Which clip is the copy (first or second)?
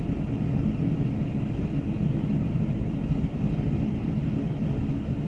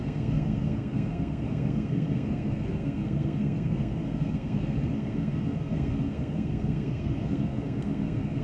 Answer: second